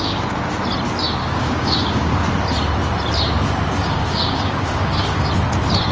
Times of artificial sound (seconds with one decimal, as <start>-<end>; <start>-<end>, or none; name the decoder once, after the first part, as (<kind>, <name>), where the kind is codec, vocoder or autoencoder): 1.2-2.3 (codec, DAC); 3.8-5.3

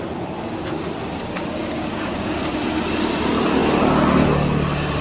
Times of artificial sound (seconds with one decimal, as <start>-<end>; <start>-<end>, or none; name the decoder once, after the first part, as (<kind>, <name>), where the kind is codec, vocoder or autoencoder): 1.6-2.6 (codec, DAC)

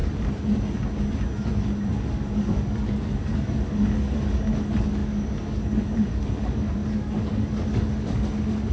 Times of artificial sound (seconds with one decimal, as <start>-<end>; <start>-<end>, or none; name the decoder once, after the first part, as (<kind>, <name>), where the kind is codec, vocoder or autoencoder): 2.0-8.7 (codec, DAC)